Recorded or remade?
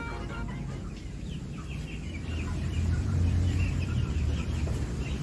remade